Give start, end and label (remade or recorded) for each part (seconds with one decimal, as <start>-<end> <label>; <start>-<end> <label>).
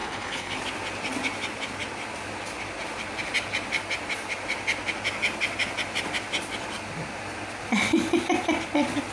0.0-0.6 remade; 0.6-9.1 recorded